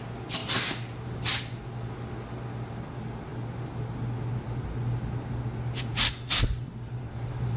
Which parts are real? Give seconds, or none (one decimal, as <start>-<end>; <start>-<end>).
0.0-7.6